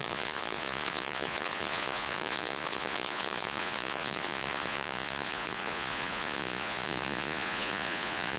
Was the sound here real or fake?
fake